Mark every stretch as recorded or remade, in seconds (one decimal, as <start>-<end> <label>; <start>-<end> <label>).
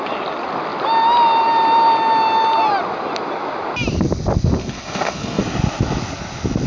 0.0-4.6 recorded; 4.6-5.4 remade; 5.4-6.7 recorded